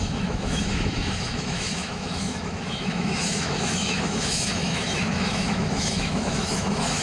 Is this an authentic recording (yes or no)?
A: no